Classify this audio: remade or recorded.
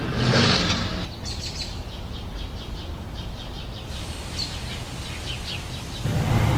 recorded